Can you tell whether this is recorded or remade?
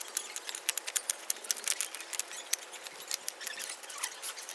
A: recorded